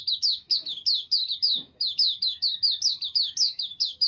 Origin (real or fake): fake